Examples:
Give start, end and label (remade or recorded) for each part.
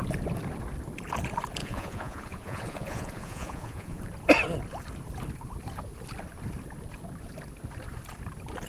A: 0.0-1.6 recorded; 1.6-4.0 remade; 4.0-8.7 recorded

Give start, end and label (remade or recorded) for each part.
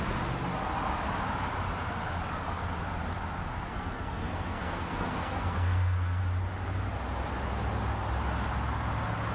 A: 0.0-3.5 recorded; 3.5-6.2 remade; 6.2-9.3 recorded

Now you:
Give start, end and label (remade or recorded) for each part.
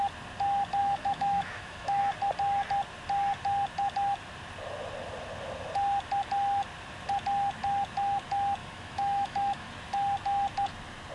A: 0.0-0.8 recorded; 0.8-2.0 remade; 2.0-8.6 recorded; 8.6-9.7 remade; 9.7-11.1 recorded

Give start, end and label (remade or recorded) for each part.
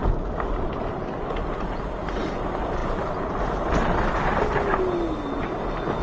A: 0.0-6.0 recorded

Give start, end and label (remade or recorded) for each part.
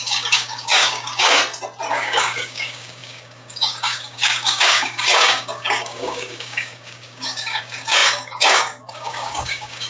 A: 0.0-1.4 remade; 1.4-1.9 recorded; 1.9-9.9 remade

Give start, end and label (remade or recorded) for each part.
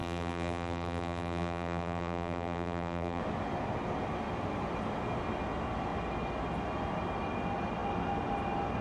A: 0.0-3.2 remade; 3.2-8.8 recorded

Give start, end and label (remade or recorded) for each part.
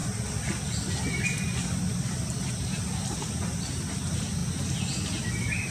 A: 0.0-5.7 recorded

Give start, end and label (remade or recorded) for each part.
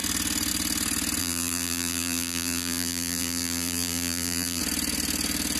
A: 0.0-1.2 recorded; 1.2-4.6 remade; 4.6-5.6 recorded